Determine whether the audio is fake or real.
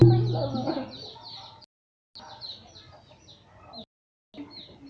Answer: real